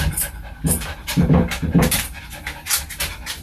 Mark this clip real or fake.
fake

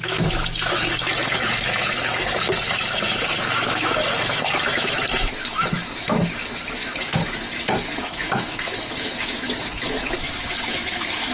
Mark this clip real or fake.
fake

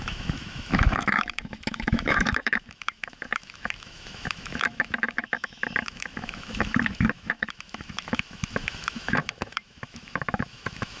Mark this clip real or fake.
fake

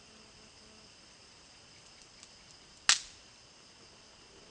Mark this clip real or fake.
real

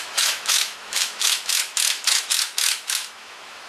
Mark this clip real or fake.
fake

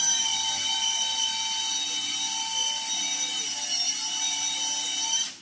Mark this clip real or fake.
real